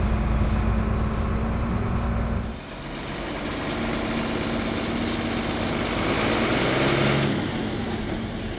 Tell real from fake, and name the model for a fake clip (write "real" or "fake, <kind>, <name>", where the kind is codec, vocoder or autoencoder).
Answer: real